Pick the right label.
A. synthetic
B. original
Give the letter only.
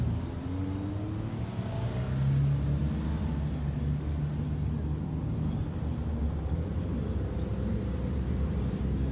B